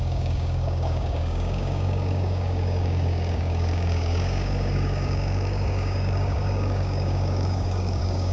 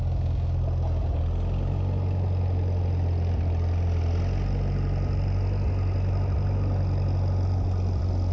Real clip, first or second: second